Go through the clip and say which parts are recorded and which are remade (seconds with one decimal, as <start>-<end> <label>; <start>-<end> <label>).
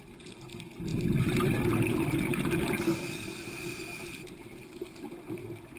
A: 0.0-5.8 recorded